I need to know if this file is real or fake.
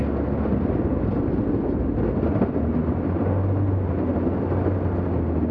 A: real